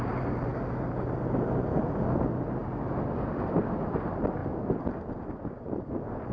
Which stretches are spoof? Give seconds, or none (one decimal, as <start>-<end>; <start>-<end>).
none